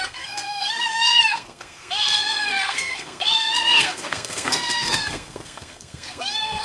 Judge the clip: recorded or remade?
remade